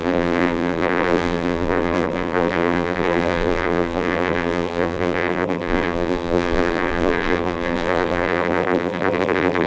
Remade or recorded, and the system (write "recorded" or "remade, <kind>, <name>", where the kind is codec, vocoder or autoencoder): remade, vocoder, BigVGAN v2